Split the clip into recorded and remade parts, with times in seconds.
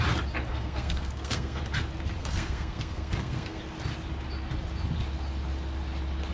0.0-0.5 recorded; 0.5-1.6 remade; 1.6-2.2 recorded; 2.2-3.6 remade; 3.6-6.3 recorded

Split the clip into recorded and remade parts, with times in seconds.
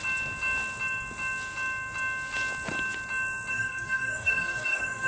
0.0-3.5 recorded; 3.5-5.1 remade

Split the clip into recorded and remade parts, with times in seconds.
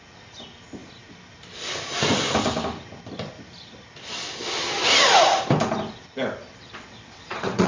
0.0-6.4 recorded; 6.4-7.7 remade